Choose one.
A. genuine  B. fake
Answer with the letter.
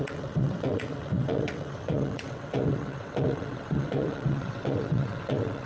B